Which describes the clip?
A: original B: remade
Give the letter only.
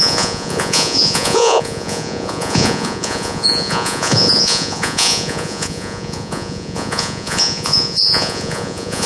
B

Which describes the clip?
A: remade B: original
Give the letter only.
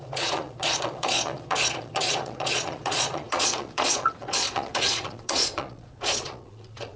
A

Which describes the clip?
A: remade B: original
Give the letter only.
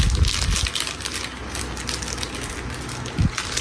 B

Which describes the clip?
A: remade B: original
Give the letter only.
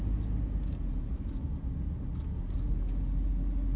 B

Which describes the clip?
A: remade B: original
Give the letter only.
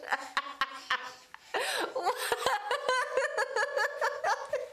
B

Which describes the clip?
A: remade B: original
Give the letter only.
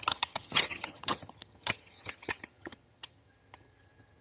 A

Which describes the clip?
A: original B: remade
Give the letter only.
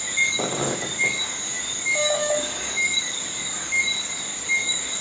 B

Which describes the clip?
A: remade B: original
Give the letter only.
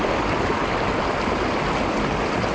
B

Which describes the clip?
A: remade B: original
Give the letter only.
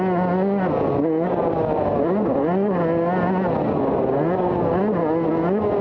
B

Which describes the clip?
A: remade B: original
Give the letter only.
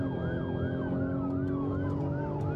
B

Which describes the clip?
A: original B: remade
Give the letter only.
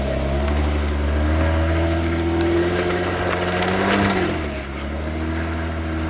A